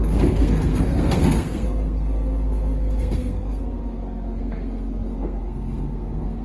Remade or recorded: remade